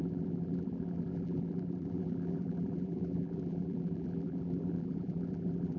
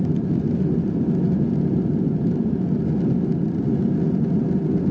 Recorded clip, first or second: second